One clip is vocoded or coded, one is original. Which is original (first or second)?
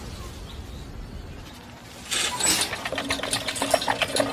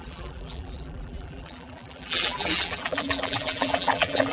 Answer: first